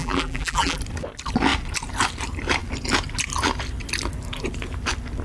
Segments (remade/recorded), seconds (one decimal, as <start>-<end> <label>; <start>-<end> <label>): 0.0-0.8 remade; 0.8-5.2 recorded